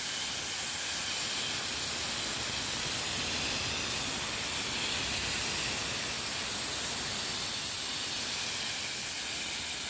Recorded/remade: recorded